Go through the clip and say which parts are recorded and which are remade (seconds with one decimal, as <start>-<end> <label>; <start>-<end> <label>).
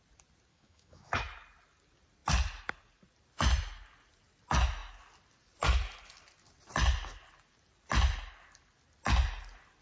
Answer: 0.0-0.5 recorded; 0.5-1.2 remade; 1.2-9.8 recorded